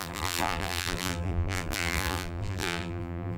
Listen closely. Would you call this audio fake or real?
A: fake